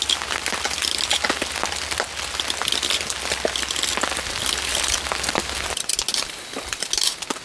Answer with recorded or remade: recorded